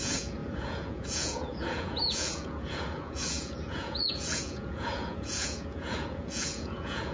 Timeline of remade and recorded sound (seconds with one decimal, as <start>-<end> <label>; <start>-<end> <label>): 0.0-7.1 remade